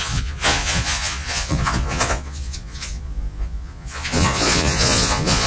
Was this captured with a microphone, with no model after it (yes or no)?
no